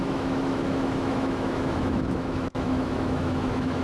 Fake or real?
fake